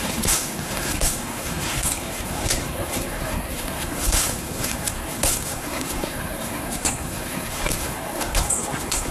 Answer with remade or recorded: remade